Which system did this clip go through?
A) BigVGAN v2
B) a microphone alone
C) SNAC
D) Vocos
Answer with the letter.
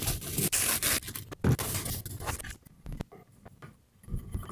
B